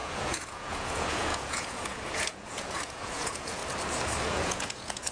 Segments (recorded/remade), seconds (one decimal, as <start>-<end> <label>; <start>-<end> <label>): 0.0-3.6 remade; 3.6-4.2 recorded; 4.2-5.1 remade